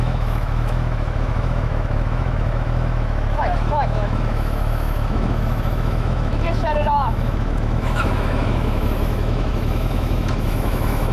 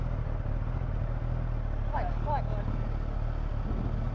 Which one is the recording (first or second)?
second